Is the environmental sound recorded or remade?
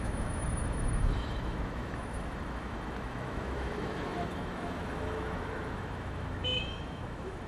remade